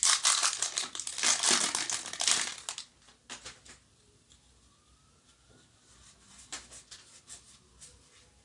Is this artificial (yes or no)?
no